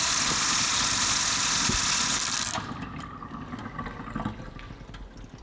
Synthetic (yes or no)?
no